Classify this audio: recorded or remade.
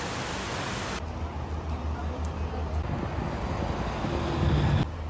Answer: recorded